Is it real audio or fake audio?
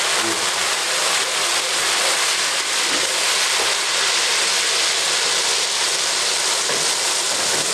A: real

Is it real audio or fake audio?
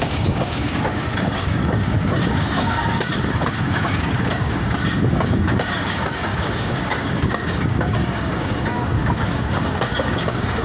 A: fake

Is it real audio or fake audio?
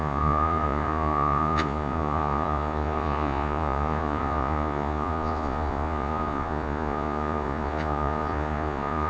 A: fake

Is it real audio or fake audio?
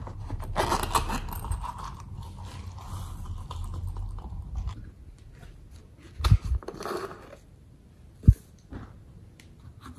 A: real